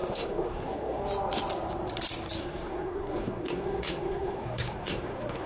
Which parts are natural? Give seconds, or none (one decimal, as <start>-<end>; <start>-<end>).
1.0-2.4